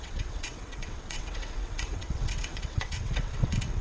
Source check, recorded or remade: remade